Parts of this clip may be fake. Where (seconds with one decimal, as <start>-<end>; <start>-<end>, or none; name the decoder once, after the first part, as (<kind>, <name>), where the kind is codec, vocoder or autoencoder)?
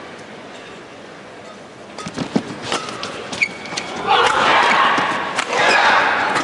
0.0-1.8 (vocoder, Vocos); 2.4-4.5; 5.6-6.4